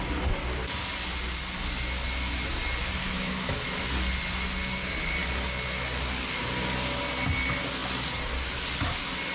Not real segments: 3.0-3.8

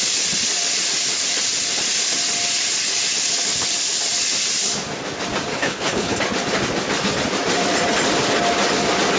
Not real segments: 5.5-6.2